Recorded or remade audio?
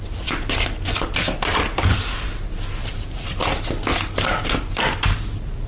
recorded